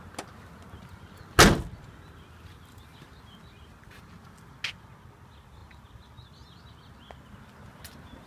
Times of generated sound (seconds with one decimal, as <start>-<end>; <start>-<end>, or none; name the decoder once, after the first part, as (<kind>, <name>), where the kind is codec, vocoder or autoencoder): none